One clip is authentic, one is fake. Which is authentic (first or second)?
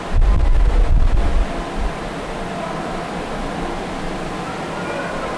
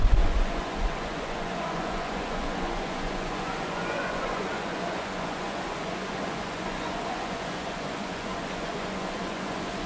first